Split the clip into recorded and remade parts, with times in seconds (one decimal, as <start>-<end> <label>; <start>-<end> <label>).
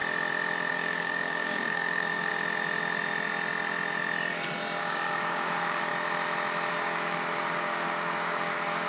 0.0-0.7 recorded; 0.7-2.3 remade; 2.3-4.8 recorded; 4.8-5.9 remade; 5.9-6.7 recorded; 6.7-8.9 remade